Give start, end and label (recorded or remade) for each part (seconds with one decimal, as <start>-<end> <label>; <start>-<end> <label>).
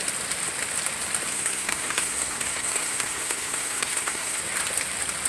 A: 0.0-1.3 recorded; 1.3-4.4 remade; 4.4-5.3 recorded